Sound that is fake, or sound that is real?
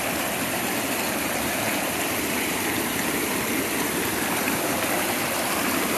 real